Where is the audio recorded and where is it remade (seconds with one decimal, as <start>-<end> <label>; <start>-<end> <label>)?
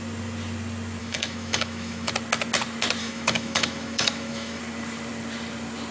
0.0-1.0 recorded; 1.0-2.1 remade; 2.1-3.0 recorded; 3.0-4.6 remade; 4.6-5.9 recorded